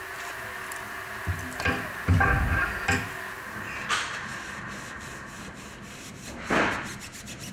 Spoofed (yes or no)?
no